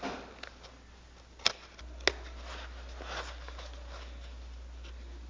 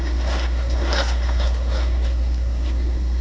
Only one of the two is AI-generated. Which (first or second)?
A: second